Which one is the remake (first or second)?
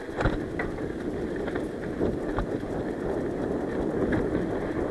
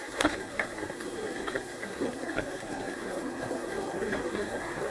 second